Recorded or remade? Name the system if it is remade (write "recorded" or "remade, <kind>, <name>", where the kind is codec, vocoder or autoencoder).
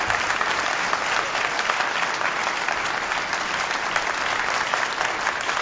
recorded